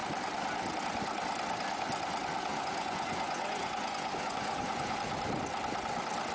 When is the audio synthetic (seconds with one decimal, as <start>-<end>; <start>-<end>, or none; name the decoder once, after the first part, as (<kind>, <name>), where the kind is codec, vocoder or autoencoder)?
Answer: 2.5-5.0 (vocoder, Vocos)